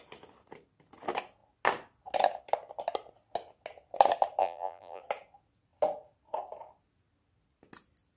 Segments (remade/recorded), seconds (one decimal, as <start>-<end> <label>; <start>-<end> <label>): 0.0-4.4 recorded; 4.4-5.0 remade; 5.0-8.2 recorded